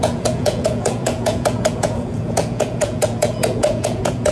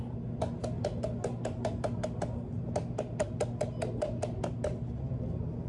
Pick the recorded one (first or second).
second